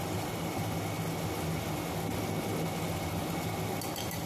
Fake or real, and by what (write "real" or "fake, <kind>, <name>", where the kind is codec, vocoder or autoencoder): real